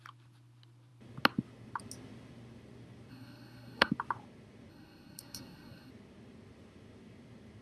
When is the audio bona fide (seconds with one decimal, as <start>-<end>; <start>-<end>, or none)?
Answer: 0.0-3.1; 3.9-4.7; 5.9-7.6